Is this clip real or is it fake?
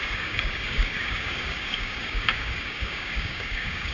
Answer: fake